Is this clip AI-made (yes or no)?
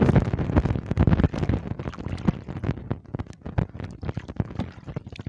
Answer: no